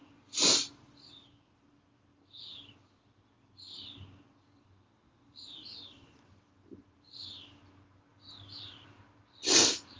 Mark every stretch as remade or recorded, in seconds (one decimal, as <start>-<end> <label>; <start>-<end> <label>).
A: 0.0-10.0 recorded